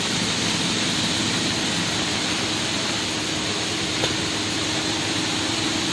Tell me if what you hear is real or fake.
real